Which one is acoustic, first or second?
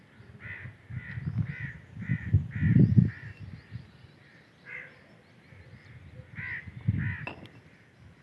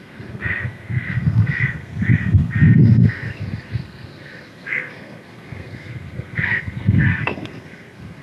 first